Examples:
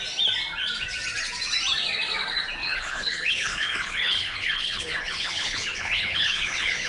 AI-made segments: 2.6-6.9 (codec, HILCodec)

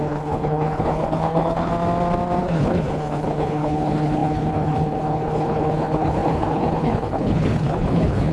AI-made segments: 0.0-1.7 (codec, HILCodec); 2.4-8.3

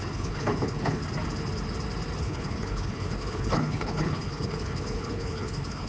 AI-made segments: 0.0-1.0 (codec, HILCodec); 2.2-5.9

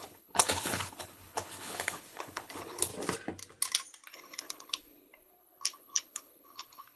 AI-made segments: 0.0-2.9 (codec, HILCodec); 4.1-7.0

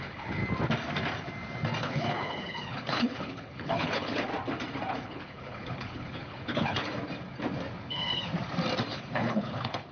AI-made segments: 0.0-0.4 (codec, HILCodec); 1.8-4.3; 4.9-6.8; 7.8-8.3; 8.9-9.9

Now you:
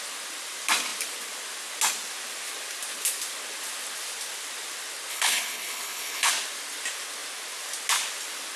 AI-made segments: 5.1-6.3 (codec, HILCodec)